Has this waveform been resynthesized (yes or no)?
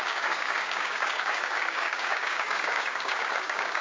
yes